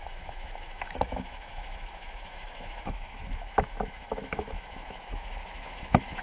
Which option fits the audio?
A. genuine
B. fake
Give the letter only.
B